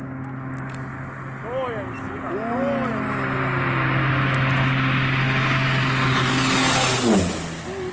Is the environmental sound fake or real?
real